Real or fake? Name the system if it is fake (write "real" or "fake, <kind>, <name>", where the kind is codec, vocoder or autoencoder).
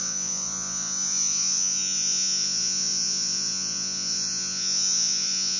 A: fake, vocoder, Vocos